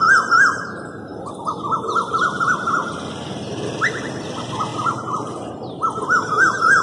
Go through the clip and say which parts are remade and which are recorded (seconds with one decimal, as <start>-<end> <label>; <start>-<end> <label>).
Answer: 0.0-2.8 recorded; 2.8-4.2 remade; 4.2-6.8 recorded